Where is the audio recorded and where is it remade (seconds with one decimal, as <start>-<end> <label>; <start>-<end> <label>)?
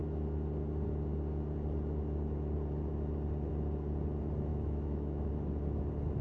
0.0-4.5 recorded; 4.5-5.3 remade; 5.3-6.2 recorded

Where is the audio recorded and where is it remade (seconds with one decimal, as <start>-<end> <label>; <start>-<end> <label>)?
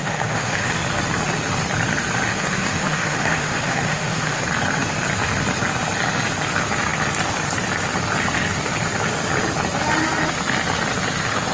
0.0-0.7 remade; 0.7-2.3 recorded; 2.3-4.4 remade; 4.4-11.5 recorded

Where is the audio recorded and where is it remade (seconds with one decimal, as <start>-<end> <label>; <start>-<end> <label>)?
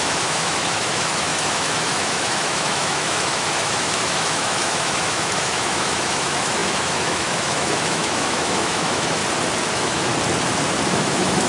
0.0-9.2 remade; 9.2-9.7 recorded; 9.7-10.1 remade; 10.1-10.9 recorded; 10.9-11.5 remade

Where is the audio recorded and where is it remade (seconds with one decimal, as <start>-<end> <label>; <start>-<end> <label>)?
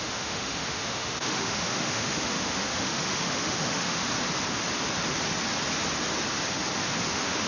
0.0-4.0 remade; 4.0-7.1 recorded; 7.1-7.5 remade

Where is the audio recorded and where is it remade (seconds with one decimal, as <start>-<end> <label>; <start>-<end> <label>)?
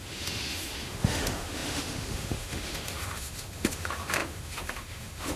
0.0-5.4 remade